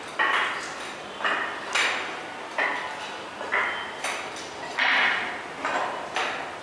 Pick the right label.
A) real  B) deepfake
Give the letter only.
A